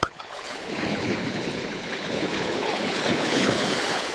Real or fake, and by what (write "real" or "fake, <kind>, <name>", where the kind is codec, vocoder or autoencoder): fake, codec, HILCodec